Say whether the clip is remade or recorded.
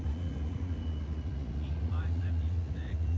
remade